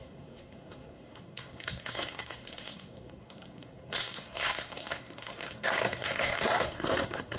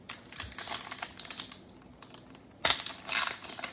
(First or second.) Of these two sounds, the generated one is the first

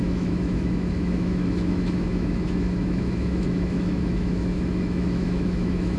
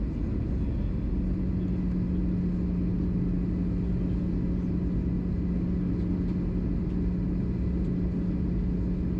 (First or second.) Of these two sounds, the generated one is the first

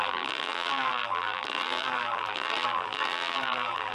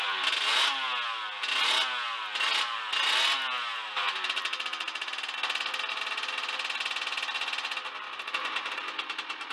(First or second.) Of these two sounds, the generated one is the first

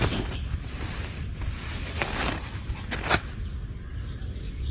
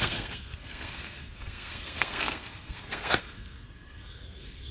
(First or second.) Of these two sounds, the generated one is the second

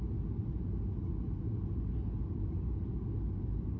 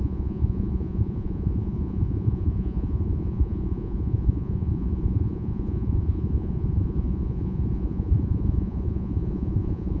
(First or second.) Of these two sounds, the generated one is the second